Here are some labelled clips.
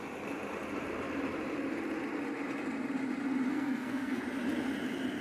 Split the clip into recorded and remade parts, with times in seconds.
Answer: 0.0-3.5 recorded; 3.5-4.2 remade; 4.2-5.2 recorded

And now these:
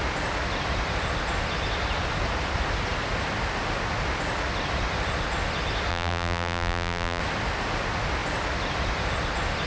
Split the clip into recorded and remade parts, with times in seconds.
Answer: 0.0-5.9 recorded; 5.9-7.2 remade; 7.2-9.7 recorded

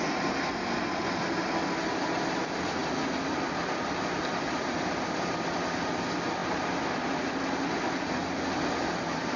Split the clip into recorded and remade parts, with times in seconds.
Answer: 0.0-9.4 recorded

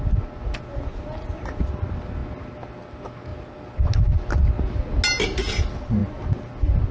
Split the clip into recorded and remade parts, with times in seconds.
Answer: 0.0-3.3 recorded; 3.3-3.9 remade; 3.9-6.9 recorded